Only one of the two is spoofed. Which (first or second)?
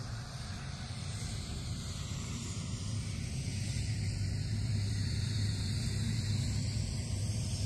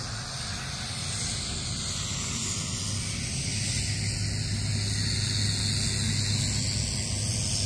first